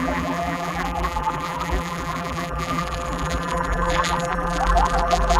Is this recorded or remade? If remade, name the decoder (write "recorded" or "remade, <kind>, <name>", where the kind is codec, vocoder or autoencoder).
remade, vocoder, BigVGAN v2